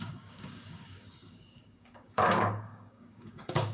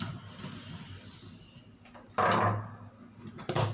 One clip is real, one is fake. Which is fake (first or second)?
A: first